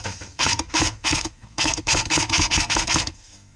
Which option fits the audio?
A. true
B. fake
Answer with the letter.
B